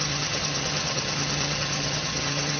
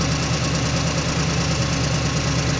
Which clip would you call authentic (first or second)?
second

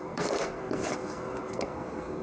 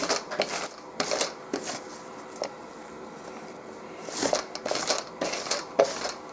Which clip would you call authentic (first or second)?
second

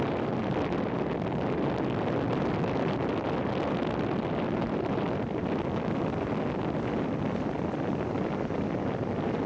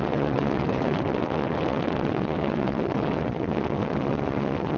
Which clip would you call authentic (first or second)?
first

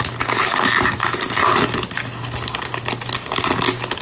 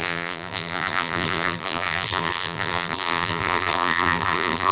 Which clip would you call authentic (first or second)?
first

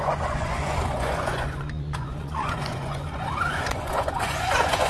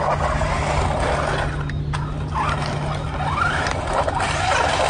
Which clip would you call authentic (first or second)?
second